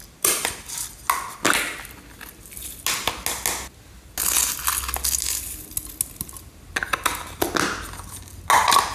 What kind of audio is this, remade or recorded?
recorded